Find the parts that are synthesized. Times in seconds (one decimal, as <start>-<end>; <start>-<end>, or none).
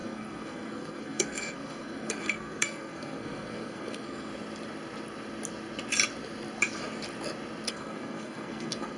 0.0-4.3; 7.7-9.0